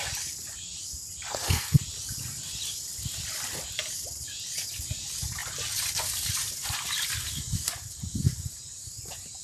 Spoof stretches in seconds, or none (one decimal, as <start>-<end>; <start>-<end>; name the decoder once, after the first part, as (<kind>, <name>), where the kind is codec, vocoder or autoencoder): 1.3-1.8 (codec, SNAC)